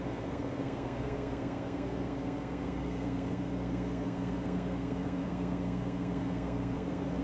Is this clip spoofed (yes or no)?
yes